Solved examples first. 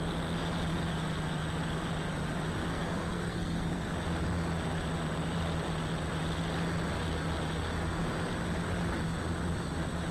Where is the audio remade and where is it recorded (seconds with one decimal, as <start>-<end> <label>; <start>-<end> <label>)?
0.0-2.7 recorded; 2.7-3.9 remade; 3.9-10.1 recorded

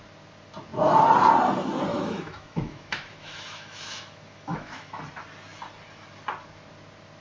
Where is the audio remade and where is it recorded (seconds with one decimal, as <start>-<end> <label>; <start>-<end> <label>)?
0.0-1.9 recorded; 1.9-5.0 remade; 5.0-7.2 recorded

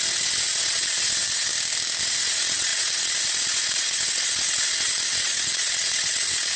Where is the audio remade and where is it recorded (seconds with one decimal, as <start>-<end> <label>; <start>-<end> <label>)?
0.0-1.5 remade; 1.5-2.0 recorded; 2.0-6.6 remade